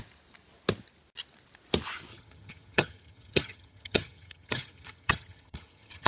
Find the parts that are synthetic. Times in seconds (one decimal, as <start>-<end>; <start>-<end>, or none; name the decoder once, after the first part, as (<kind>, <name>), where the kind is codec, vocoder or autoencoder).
2.1-6.1 (vocoder, HiFi-GAN)